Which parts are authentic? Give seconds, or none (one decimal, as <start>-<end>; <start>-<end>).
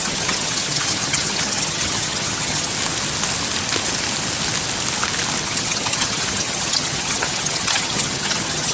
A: 2.7-5.4